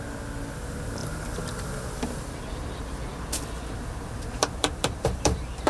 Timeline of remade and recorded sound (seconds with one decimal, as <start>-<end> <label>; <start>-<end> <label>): 0.0-4.6 recorded; 4.6-5.7 remade

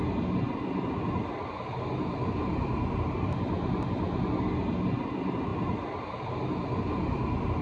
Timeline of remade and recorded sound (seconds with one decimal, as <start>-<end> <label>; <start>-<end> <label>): 0.0-7.6 recorded

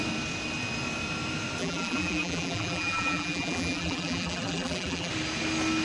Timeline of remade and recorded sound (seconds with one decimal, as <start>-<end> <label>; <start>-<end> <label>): 0.0-1.6 recorded; 1.6-5.1 remade; 5.1-5.8 recorded

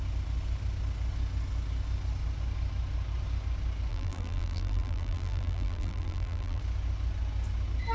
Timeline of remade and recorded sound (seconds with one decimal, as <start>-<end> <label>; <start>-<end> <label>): 0.0-3.9 recorded; 3.9-6.6 remade; 6.6-7.9 recorded

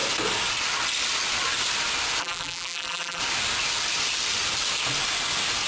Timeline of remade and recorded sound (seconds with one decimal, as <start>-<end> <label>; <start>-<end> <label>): 0.0-2.2 recorded; 2.2-3.2 remade; 3.2-5.7 recorded

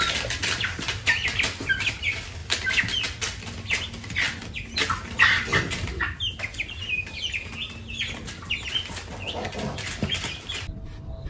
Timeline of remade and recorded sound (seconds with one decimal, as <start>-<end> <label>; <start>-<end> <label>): 0.0-11.3 recorded

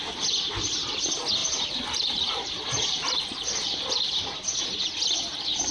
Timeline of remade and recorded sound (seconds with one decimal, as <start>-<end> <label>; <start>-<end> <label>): 0.0-1.4 recorded; 1.4-4.8 remade; 4.8-5.7 recorded